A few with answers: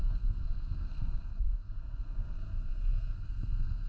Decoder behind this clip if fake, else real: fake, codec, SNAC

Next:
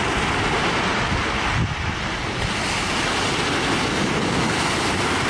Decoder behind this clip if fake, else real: real